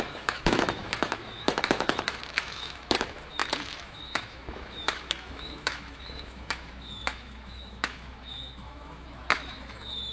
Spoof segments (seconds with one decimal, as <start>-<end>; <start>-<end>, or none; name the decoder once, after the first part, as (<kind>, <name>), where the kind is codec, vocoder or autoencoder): 0.0-10.1 (autoencoder, DAC-VAE)